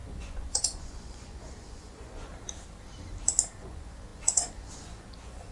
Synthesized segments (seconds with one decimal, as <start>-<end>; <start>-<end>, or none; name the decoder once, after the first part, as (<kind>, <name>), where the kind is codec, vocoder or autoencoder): 0.0-2.3 (vocoder, Vocos); 3.6-5.5